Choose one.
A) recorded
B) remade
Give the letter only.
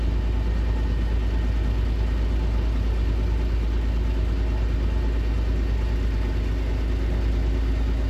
A